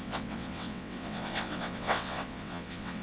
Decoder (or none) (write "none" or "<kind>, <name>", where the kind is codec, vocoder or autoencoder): vocoder, WaveNeXt